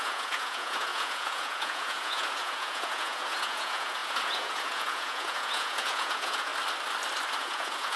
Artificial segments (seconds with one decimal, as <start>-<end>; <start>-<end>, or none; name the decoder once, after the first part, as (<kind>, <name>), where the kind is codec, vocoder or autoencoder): 0.0-6.5 (vocoder, Vocos); 7.4-8.0